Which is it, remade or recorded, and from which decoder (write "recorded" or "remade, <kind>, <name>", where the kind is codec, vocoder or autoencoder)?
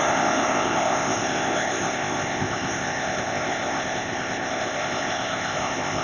remade, codec, ZipCodec